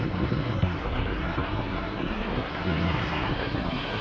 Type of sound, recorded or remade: remade